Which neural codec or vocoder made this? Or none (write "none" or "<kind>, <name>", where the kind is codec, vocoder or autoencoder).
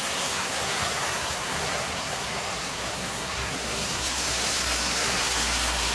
codec, SNAC